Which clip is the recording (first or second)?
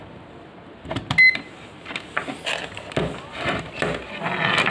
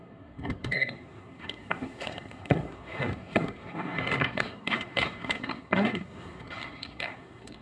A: first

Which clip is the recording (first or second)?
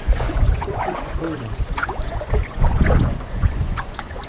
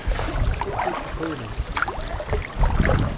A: second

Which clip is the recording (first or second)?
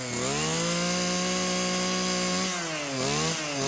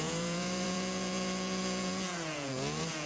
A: first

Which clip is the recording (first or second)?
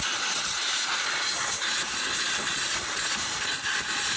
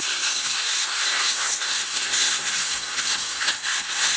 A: first